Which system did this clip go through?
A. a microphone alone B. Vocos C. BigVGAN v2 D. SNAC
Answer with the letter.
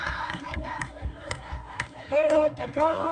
D